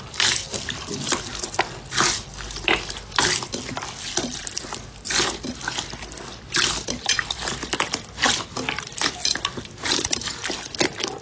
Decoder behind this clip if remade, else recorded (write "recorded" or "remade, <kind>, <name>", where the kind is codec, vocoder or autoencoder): recorded